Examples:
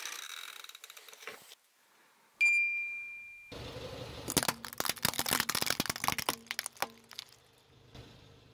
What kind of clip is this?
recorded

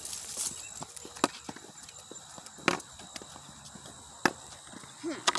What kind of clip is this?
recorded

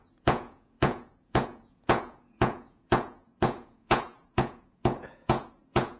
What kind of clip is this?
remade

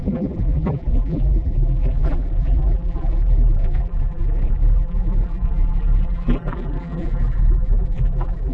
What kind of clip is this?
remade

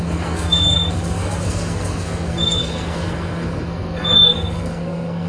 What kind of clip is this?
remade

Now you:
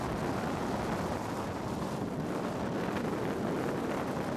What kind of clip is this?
recorded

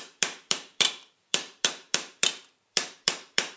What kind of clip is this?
remade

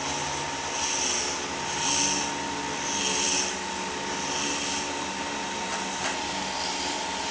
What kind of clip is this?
recorded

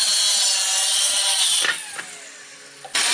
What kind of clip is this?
recorded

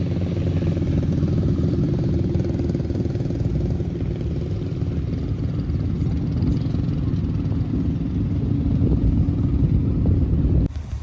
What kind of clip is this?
recorded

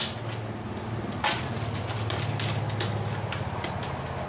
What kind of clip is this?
recorded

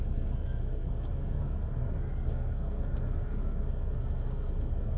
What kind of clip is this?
remade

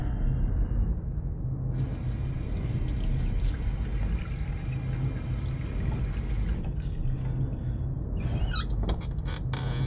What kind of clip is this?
recorded